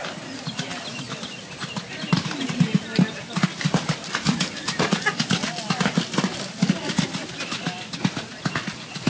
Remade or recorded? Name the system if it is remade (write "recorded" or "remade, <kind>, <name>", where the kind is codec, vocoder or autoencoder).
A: recorded